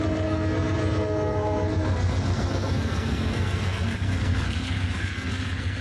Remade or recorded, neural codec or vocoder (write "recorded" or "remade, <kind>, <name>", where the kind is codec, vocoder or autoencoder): remade, codec, SNAC